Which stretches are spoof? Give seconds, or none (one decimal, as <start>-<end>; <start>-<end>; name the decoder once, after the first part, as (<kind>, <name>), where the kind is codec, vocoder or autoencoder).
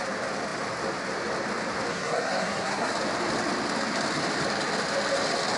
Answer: 1.9-2.9 (codec, SNAC)